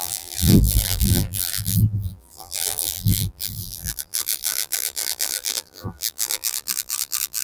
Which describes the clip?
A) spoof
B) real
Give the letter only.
A